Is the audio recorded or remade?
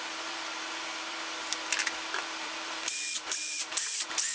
remade